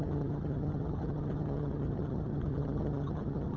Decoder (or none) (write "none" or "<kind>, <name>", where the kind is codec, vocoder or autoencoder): vocoder, HiFi-GAN